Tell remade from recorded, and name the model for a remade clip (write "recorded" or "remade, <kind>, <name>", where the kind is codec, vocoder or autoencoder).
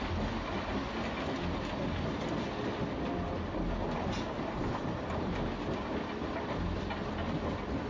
recorded